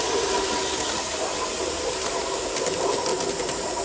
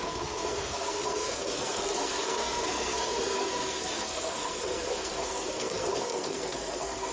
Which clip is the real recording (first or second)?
first